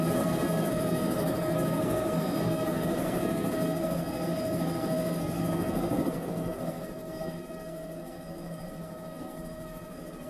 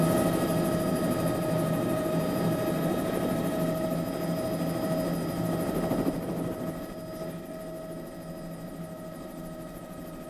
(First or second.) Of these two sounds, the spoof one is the first